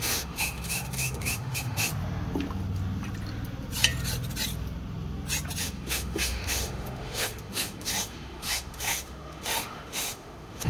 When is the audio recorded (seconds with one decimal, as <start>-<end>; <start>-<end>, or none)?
1.9-5.6